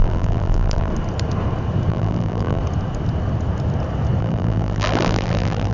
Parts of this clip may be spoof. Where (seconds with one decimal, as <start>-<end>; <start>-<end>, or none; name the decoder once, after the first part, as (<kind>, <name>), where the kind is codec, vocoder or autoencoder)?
0.0-0.9 (vocoder, BigVGAN v2); 1.9-2.6; 4.2-5.7